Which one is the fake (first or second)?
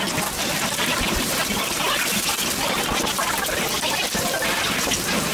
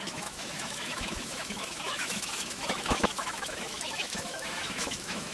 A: second